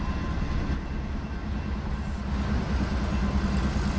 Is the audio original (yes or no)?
yes